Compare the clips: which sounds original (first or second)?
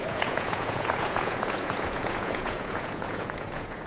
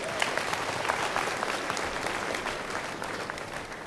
second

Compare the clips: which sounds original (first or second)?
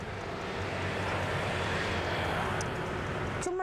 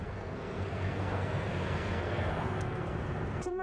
first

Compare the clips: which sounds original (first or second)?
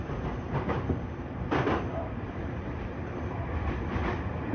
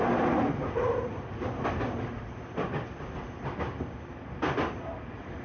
second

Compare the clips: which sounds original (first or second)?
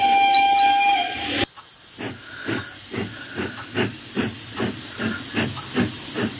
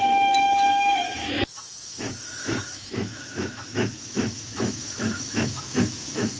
first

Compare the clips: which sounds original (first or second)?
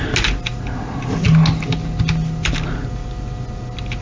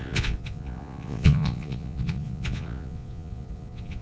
first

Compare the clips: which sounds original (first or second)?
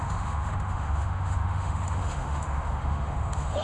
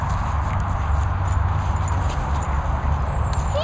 second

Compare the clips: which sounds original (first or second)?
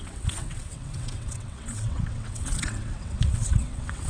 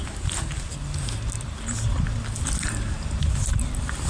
second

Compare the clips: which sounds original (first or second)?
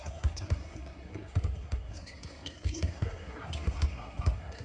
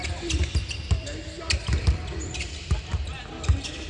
second